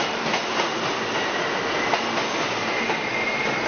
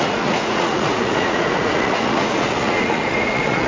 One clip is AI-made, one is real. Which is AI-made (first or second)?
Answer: second